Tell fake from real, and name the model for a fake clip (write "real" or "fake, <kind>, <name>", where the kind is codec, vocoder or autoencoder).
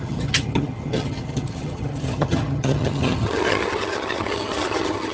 fake, vocoder, HiFi-GAN